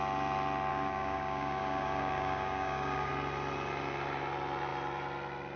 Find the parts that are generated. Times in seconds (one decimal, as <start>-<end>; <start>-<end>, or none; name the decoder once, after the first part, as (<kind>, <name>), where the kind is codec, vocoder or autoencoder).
0.7-3.1 (codec, DAC)

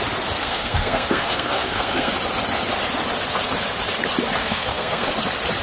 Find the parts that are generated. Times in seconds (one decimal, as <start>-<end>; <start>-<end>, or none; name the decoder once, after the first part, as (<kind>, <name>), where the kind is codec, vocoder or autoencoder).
0.4-2.1 (codec, SNAC); 4.4-5.1

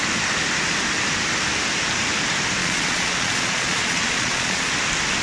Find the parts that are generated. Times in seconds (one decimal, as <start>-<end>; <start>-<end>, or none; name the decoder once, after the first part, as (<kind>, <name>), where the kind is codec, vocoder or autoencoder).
2.6-4.7 (vocoder, Vocos)

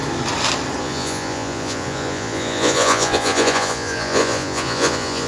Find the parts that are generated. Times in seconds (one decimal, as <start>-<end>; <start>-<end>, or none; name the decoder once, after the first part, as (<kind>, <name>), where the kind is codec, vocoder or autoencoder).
0.8-5.3 (vocoder, Vocos)

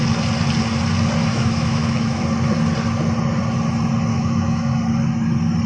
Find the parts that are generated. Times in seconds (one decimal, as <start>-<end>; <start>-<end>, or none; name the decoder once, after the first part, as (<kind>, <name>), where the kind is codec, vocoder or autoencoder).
1.3-2.2 (autoencoder, DAC-VAE); 4.1-4.8

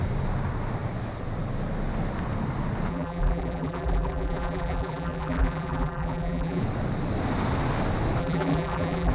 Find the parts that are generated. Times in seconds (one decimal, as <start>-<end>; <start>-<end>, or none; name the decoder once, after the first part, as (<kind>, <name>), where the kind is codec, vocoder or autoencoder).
2.9-6.6 (vocoder, BigVGAN v2); 8.2-9.1

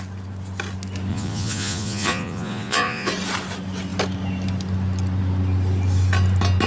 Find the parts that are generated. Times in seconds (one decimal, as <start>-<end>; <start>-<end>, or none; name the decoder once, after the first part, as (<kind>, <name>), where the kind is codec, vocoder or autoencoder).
1.1-3.1 (vocoder, Vocos)

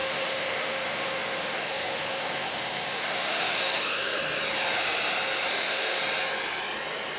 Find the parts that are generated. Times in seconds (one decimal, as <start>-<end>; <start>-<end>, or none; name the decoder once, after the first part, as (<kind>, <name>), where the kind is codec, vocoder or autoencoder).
0.0-4.2 (autoencoder, DAC-VAE); 5.5-6.0